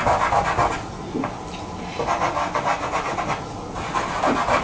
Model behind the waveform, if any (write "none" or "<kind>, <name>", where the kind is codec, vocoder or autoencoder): none